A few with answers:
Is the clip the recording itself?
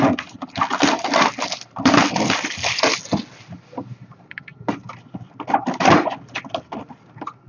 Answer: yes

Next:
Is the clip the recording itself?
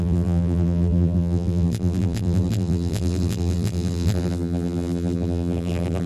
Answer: no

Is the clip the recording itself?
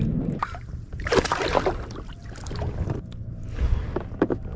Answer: no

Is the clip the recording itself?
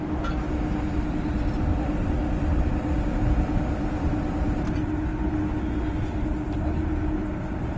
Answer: yes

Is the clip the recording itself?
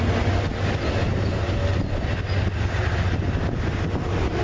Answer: yes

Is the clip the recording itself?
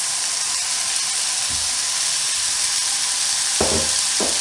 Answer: yes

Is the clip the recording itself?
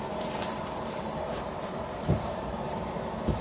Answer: no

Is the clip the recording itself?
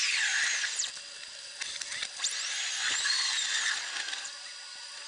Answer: yes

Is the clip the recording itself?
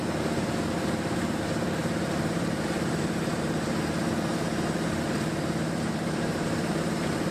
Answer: no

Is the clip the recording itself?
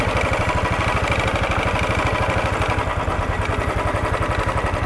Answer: yes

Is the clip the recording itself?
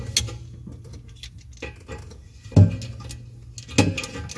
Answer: yes